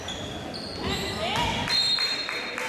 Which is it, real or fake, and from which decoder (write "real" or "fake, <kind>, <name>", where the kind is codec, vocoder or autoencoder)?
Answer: real